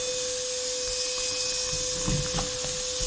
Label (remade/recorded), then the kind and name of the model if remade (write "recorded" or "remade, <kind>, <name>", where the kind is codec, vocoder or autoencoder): recorded